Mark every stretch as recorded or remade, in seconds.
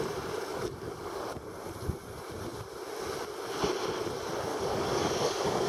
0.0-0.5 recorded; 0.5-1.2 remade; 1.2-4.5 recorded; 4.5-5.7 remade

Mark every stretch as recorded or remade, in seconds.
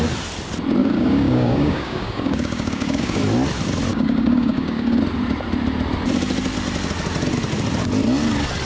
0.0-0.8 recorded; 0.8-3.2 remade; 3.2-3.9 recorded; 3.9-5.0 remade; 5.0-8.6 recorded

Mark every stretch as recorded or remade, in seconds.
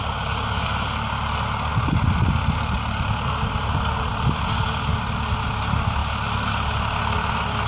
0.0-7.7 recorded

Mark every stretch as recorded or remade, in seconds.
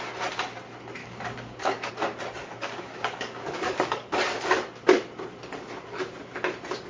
0.0-1.0 recorded; 1.0-1.9 remade; 1.9-2.4 recorded; 2.4-4.1 remade; 4.1-6.9 recorded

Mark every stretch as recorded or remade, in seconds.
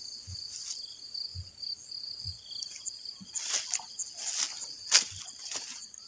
0.0-6.1 recorded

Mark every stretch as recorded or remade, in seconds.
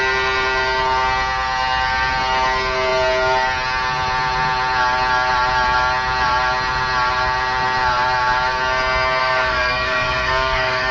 0.0-9.2 recorded; 9.2-10.9 remade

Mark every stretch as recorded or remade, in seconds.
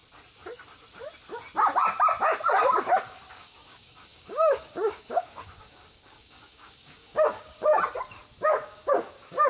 0.0-3.3 recorded; 3.3-7.7 remade; 7.7-8.4 recorded; 8.4-9.5 remade